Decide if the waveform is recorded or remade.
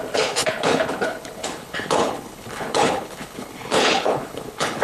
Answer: remade